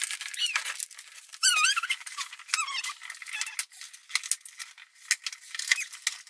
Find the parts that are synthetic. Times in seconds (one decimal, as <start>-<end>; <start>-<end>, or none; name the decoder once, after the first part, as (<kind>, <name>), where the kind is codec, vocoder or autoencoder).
1.3-2.8 (vocoder, BigVGAN v2)